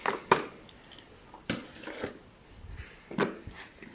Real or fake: real